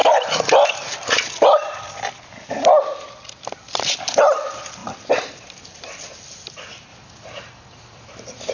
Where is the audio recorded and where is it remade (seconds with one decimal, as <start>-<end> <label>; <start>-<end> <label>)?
0.0-0.5 remade; 0.5-6.9 recorded; 6.9-8.5 remade